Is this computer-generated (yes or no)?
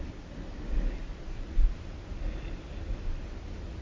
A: no